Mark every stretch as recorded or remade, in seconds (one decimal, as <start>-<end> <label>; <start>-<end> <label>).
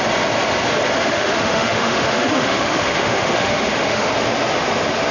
0.0-1.0 recorded; 1.0-4.1 remade; 4.1-5.1 recorded